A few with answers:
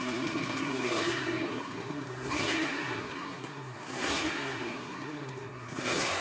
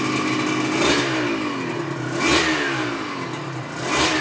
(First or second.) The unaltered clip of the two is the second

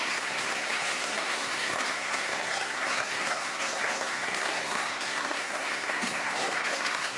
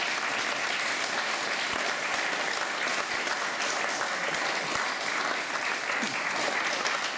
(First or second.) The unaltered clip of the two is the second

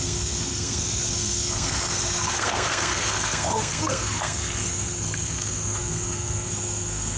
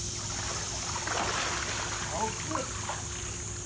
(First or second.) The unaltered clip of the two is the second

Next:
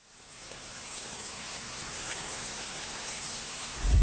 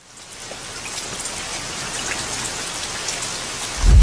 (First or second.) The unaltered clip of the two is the second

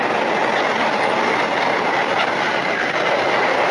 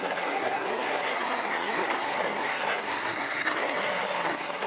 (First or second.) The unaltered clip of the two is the first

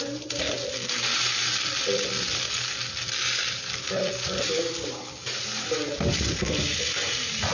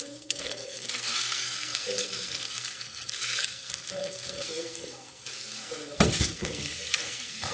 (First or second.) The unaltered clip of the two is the first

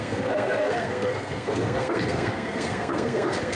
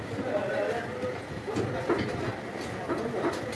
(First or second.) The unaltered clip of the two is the second